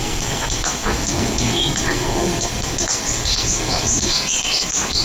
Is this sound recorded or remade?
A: remade